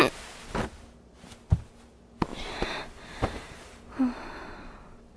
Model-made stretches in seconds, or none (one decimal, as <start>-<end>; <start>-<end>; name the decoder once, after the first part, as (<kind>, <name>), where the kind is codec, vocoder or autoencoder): 2.3-4.0 (vocoder, BigVGAN v2)